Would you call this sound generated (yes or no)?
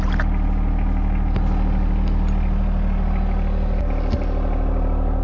no